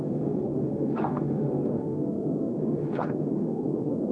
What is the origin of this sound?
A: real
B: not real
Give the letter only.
B